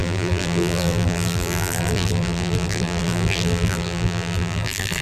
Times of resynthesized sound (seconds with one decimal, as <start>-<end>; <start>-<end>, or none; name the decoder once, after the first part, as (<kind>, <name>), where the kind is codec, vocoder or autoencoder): 0.0-5.0 (vocoder, BigVGAN v2)